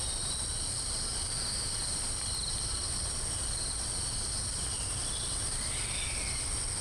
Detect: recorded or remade recorded